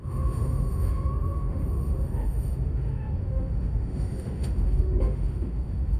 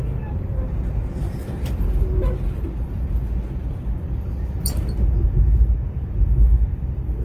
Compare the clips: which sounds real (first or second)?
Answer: second